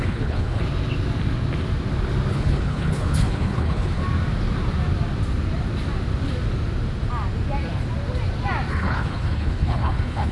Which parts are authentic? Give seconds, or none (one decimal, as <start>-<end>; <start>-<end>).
0.6-2.3; 4.0-8.7